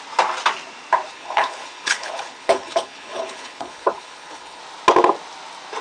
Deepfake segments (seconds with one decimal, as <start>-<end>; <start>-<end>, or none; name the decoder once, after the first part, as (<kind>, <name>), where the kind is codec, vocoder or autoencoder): 1.1-4.6 (codec, HILCodec)